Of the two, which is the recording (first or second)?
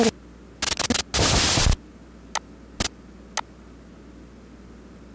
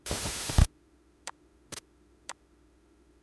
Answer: first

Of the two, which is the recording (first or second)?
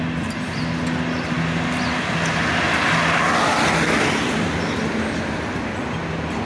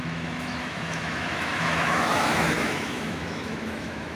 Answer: first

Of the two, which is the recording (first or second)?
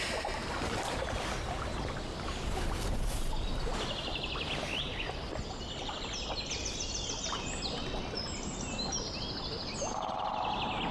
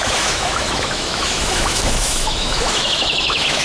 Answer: first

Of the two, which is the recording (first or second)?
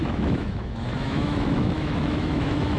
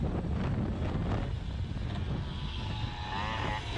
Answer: second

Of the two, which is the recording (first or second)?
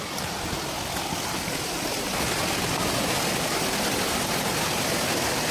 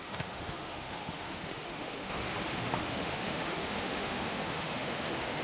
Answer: first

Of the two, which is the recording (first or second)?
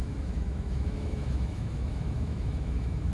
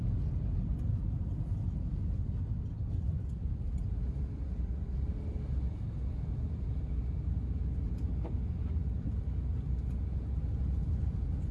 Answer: second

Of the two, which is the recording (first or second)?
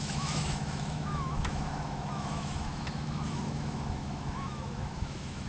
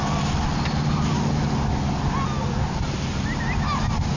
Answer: second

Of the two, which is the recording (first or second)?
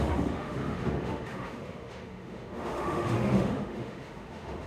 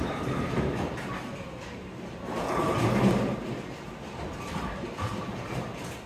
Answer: second